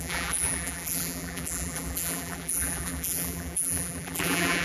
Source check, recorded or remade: remade